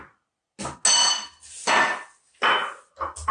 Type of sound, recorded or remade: recorded